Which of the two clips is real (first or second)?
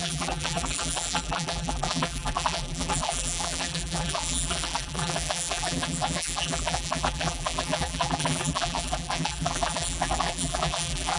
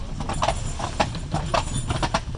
second